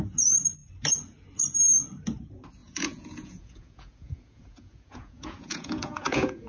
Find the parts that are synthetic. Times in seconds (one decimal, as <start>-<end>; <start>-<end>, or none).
2.6-6.5

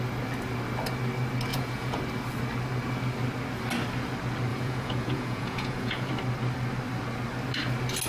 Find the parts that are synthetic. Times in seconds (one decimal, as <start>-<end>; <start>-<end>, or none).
1.5-2.0; 4.5-6.1

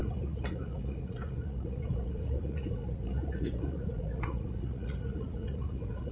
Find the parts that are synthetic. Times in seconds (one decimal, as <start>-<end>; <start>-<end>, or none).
0.0-6.1

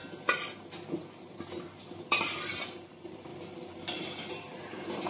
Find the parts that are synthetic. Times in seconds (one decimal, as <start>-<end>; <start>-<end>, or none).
1.0-3.3; 4.3-5.1

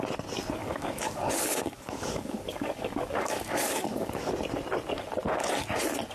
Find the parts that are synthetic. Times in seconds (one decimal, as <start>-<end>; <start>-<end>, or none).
0.6-4.3

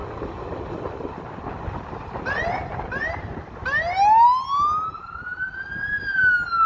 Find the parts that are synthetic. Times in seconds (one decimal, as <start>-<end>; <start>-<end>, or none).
5.3-6.3

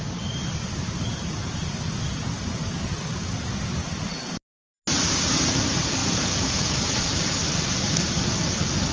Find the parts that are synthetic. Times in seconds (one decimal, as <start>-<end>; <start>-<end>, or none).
6.0-6.7

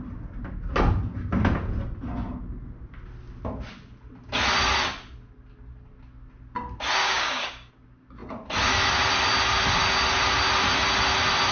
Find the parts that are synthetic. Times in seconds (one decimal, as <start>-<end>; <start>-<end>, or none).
7.0-7.7